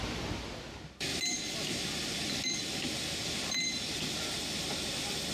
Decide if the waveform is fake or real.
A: real